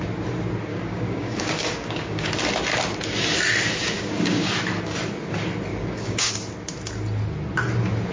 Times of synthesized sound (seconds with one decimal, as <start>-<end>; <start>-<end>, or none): 0.7-2.3; 3.8-4.5; 5.7-6.3